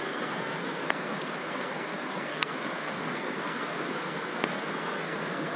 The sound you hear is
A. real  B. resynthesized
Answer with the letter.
B